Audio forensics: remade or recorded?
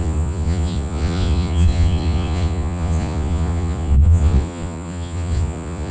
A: remade